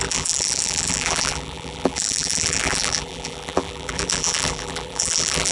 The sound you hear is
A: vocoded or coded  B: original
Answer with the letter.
A